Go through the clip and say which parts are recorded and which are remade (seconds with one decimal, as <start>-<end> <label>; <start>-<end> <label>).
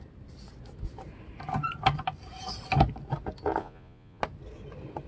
0.0-3.6 recorded; 3.6-4.2 remade; 4.2-5.1 recorded